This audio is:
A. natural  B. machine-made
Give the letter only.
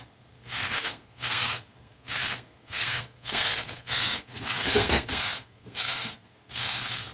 B